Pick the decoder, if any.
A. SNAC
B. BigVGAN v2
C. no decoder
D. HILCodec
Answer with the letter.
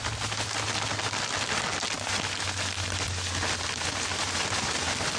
C